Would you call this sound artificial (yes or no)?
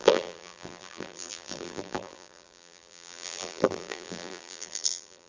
yes